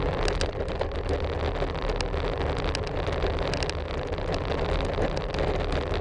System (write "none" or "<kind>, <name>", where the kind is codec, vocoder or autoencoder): none